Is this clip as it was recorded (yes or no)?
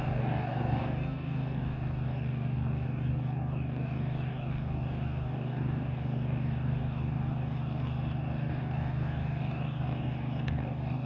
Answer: no